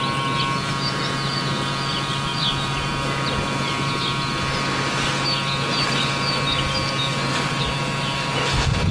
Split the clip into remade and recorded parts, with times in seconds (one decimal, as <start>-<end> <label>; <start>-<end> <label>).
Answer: 0.0-8.9 recorded

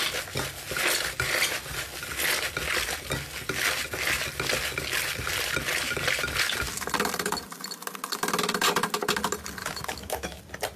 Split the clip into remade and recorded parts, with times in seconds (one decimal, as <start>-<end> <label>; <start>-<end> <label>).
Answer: 0.0-9.6 recorded; 9.6-10.4 remade; 10.4-10.8 recorded